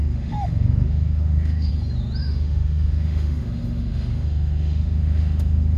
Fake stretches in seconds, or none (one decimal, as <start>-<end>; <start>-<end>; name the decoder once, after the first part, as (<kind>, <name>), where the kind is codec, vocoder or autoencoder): 0.0-1.7 (autoencoder, DAC-VAE); 2.2-5.8